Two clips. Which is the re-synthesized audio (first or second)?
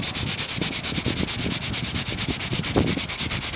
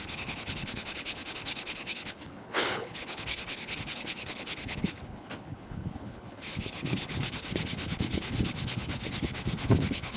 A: second